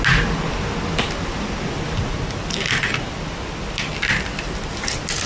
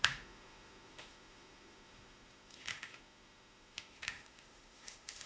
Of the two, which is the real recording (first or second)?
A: first